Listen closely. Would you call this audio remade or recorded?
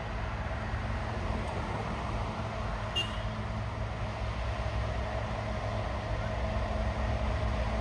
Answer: recorded